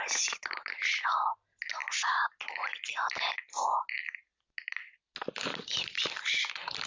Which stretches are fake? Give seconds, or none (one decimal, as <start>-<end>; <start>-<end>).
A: none